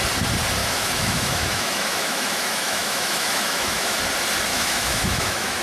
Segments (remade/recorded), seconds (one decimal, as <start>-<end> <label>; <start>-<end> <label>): 0.0-0.6 recorded; 0.6-4.0 remade; 4.0-4.5 recorded; 4.5-5.6 remade